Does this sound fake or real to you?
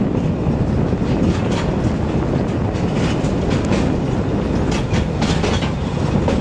real